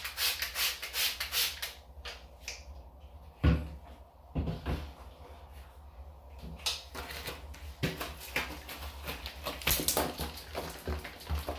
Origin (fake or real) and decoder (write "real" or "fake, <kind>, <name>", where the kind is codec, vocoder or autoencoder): real